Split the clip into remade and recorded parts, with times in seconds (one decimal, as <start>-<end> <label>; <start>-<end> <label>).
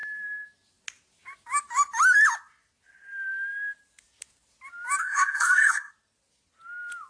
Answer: 0.0-5.0 recorded; 5.0-5.9 remade; 5.9-7.1 recorded